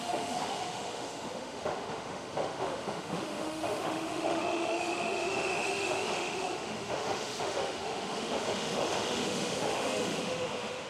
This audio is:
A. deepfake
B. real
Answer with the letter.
A